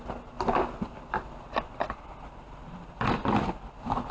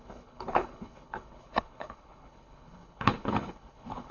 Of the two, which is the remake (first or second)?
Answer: second